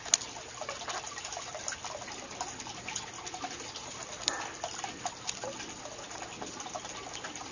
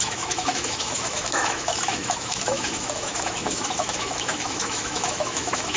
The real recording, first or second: first